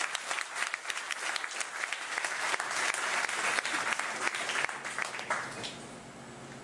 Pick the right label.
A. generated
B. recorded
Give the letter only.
B